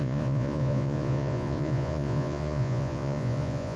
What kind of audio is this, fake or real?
fake